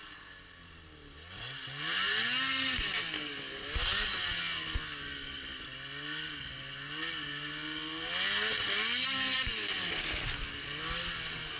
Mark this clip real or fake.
real